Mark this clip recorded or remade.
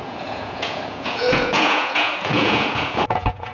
remade